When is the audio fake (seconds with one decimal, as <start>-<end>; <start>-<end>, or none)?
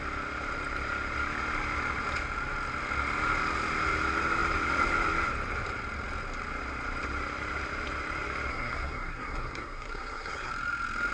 8.5-10.5